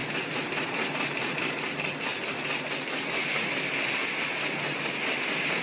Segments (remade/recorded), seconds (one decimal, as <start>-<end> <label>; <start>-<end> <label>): 0.0-5.6 recorded